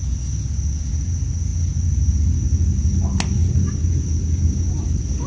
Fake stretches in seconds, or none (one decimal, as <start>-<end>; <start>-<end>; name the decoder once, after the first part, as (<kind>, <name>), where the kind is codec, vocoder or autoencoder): none